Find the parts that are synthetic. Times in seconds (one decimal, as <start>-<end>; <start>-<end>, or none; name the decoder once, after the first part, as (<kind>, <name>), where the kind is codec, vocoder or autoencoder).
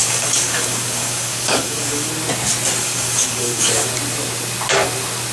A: 0.0-2.1 (codec, DAC); 2.8-3.7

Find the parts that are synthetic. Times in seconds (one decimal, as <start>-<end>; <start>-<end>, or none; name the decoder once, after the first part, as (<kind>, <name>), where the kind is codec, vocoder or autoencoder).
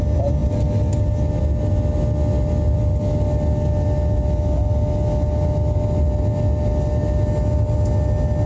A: none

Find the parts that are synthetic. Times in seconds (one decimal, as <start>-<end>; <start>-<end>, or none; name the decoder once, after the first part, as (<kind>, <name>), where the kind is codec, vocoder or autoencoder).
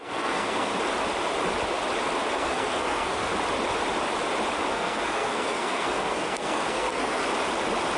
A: 0.0-0.7 (codec, SNAC); 2.3-3.3; 4.7-7.2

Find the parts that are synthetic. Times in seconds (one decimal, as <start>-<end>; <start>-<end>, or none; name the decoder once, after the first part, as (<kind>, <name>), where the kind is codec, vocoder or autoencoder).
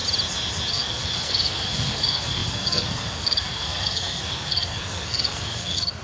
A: 0.7-6.0 (codec, SNAC)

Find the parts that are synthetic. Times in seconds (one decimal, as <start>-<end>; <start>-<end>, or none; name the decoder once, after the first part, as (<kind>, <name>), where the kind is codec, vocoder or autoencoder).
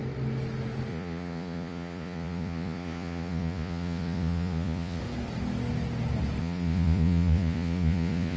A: 0.9-5.0 (vocoder, Vocos); 6.4-8.4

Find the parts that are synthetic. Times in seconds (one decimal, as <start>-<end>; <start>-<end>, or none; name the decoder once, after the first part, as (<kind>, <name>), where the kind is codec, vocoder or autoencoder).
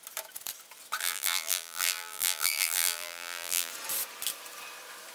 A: 1.0-3.7 (vocoder, BigVGAN v2)